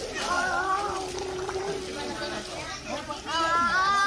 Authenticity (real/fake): real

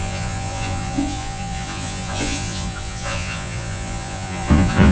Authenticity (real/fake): fake